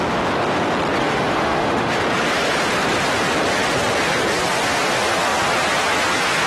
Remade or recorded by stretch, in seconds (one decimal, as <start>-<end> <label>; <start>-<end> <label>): 0.0-1.0 recorded; 1.0-1.9 remade; 1.9-6.5 recorded